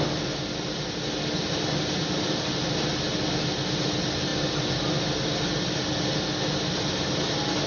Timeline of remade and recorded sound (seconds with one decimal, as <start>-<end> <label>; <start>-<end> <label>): 0.0-7.7 recorded